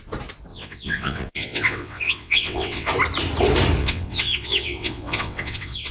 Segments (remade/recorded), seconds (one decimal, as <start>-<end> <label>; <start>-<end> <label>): 0.0-0.5 recorded; 0.5-2.9 remade; 2.9-3.8 recorded; 3.8-5.9 remade